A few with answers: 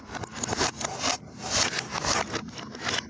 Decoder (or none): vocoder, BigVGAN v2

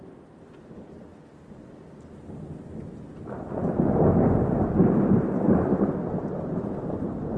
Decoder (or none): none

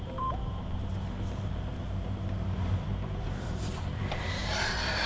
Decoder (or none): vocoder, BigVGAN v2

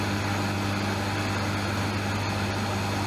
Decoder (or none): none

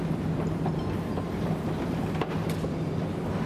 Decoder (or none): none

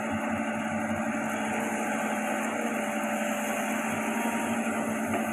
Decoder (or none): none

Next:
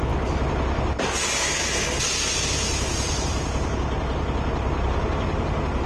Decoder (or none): none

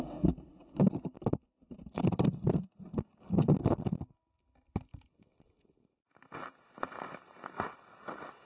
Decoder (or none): none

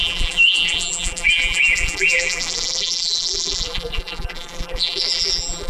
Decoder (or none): vocoder, BigVGAN v2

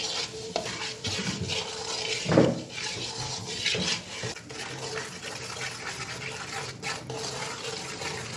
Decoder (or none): none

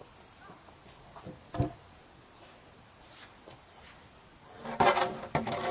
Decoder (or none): none